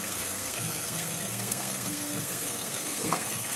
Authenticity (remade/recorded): remade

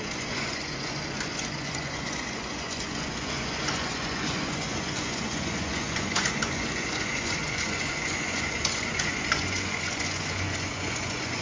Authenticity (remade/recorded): remade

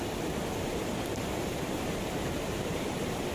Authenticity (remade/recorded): remade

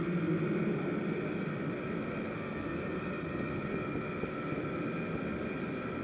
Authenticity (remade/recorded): recorded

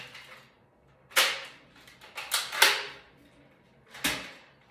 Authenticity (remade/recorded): recorded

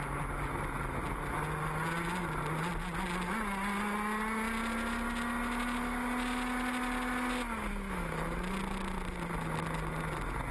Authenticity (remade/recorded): recorded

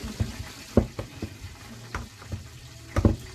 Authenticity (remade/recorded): recorded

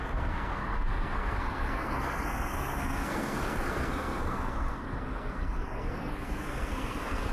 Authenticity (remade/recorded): remade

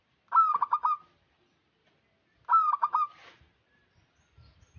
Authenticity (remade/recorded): recorded